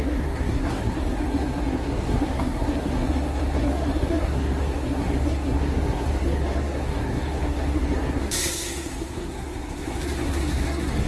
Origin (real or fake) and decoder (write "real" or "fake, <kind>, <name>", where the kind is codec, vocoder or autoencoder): fake, codec, SNAC